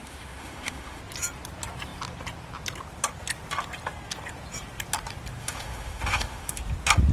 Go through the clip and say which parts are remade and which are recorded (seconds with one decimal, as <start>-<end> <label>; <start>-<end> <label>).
0.0-1.0 remade; 1.0-5.4 recorded; 5.4-6.6 remade; 6.6-7.1 recorded